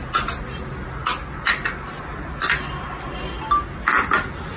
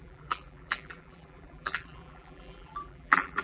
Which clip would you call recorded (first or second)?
first